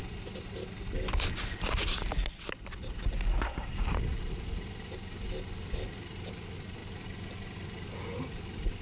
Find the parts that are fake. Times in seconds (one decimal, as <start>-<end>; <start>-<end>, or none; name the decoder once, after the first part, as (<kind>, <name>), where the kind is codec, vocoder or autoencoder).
none